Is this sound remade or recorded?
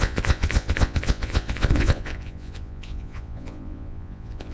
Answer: remade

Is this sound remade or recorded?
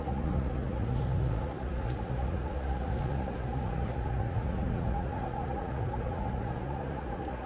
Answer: remade